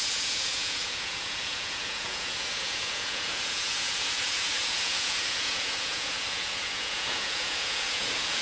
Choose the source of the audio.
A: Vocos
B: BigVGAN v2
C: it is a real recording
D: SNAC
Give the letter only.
A